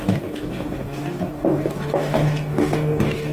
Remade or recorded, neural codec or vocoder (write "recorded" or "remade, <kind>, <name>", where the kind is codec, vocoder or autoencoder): remade, codec, DAC